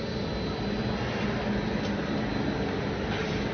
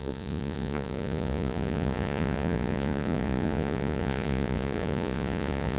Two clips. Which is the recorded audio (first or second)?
first